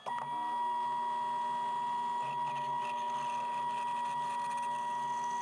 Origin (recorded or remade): recorded